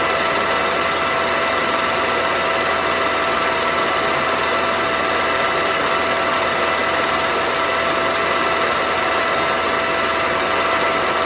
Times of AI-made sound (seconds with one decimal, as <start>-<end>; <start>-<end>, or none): 1.6-4.4; 6.8-7.5